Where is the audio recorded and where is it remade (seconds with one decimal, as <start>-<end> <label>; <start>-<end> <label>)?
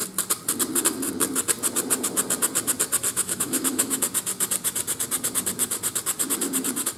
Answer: 0.0-3.1 recorded; 3.1-4.0 remade; 4.0-7.0 recorded